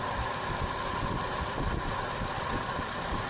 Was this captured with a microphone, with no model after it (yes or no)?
yes